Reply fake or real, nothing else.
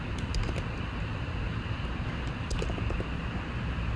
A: real